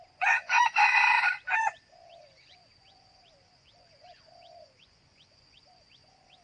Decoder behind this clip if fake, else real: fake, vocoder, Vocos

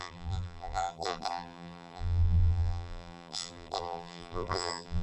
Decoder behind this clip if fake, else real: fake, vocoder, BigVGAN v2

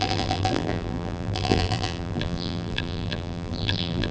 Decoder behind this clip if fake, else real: fake, vocoder, BigVGAN v2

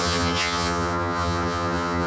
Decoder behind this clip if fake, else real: fake, vocoder, HiFi-GAN